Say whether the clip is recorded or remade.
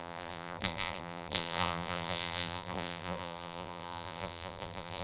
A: remade